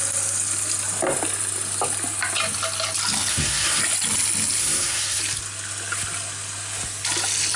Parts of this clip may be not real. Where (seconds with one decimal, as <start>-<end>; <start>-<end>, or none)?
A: 3.3-3.8; 4.6-5.2